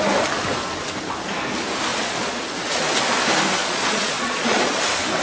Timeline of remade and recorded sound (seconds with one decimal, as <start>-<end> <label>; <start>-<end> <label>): 0.0-1.9 recorded; 1.9-2.4 remade; 2.4-3.6 recorded; 3.6-4.8 remade; 4.8-5.2 recorded